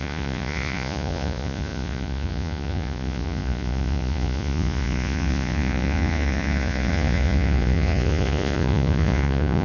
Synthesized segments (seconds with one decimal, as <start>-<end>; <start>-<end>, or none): 0.0-9.6